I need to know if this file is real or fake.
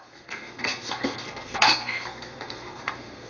fake